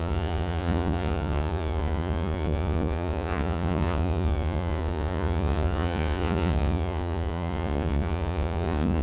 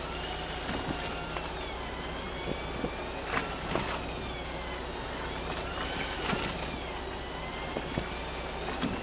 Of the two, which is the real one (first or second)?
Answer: second